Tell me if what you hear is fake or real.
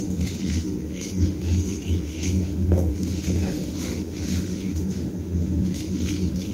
fake